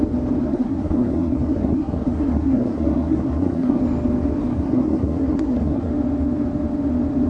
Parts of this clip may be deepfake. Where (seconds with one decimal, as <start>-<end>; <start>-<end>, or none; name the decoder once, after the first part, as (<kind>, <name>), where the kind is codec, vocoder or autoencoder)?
0.4-3.8 (codec, SNAC); 4.5-5.9

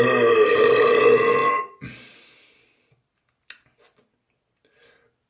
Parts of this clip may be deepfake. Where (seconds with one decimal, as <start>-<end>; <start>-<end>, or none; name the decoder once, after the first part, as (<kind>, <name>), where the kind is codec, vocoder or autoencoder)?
none